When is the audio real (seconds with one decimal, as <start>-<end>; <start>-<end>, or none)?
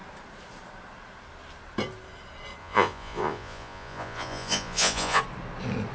0.0-2.6; 5.2-5.9